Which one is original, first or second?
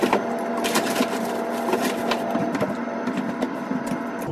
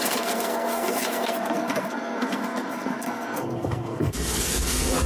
first